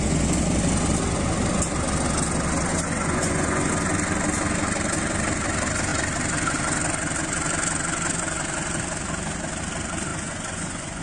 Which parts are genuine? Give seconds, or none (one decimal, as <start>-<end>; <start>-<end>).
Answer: 0.0-2.7; 3.7-10.1